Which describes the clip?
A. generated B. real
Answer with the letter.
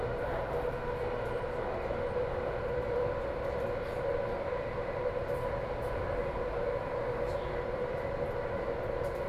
B